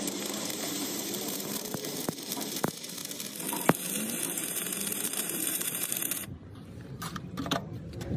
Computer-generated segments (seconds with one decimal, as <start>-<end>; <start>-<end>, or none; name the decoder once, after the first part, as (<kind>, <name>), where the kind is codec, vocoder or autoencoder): 0.0-3.0 (vocoder, BigVGAN v2); 4.5-8.2